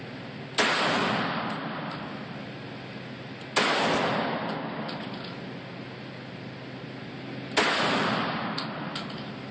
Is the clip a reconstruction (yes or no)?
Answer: no